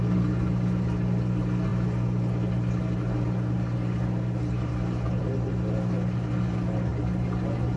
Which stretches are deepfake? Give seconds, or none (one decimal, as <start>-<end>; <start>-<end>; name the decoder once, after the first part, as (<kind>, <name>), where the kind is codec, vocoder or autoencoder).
none